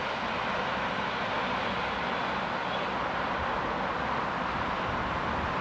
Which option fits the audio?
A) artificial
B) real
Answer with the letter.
B